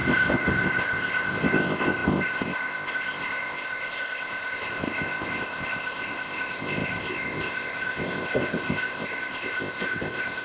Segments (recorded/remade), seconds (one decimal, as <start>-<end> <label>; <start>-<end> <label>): 0.0-10.4 remade